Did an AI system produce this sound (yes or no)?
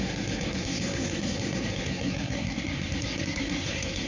yes